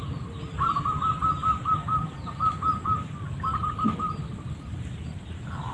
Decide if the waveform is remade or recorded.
recorded